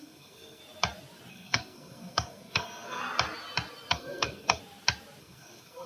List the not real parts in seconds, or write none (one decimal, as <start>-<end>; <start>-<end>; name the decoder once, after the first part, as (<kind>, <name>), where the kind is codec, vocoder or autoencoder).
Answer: 0.0-0.6 (codec, SNAC); 1.3-3.0; 3.9-4.6; 5.2-5.9